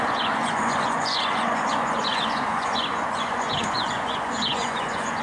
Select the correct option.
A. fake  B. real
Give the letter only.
A